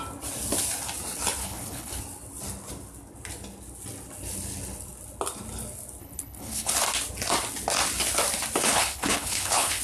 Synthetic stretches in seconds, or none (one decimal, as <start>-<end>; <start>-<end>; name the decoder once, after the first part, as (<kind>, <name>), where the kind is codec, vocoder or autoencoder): 1.4-2.0 (codec, HILCodec); 6.0-6.7; 8.6-9.8